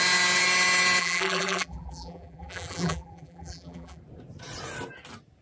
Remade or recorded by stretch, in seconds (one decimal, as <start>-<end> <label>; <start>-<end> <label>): 0.0-1.0 recorded; 1.0-4.0 remade; 4.0-5.4 recorded